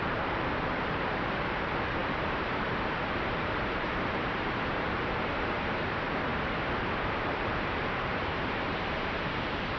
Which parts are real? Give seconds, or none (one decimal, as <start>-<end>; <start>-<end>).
6.3-6.8